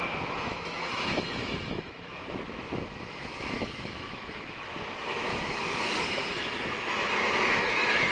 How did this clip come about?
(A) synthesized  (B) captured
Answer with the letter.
A